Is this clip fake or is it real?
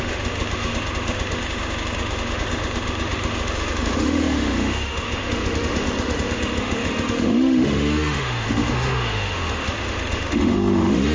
fake